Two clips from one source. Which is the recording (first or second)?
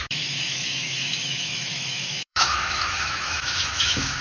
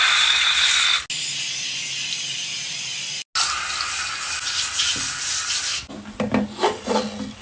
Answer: second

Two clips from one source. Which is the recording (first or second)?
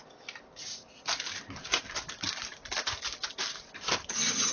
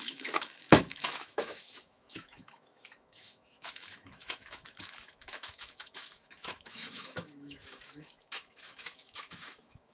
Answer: first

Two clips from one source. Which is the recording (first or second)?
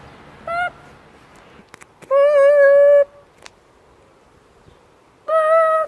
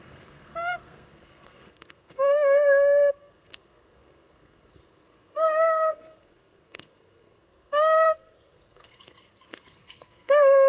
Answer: first